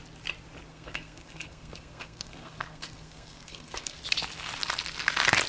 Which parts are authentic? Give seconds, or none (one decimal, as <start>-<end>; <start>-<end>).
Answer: 0.0-0.7; 4.0-5.5